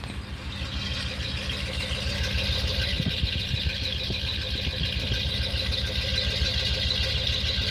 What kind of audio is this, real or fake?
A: real